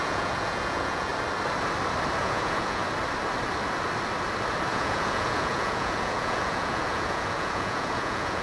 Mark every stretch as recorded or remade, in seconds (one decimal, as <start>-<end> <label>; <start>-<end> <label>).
0.0-1.1 remade; 1.1-2.2 recorded; 2.2-2.8 remade; 2.8-4.7 recorded; 4.7-8.4 remade